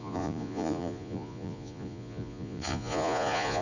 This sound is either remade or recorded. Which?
remade